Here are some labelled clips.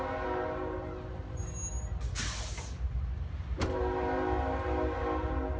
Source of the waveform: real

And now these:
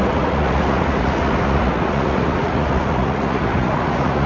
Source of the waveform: fake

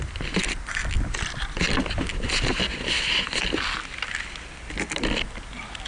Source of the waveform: real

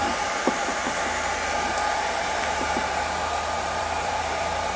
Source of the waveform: fake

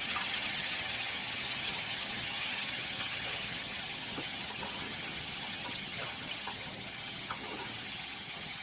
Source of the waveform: fake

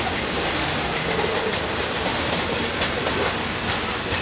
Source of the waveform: real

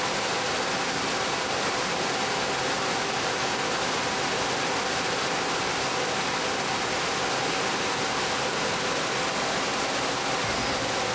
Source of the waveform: real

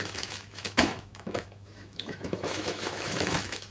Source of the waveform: fake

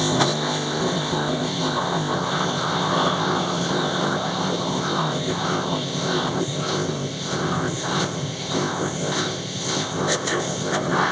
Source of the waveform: fake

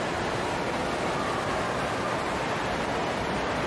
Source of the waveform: real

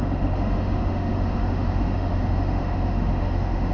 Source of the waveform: fake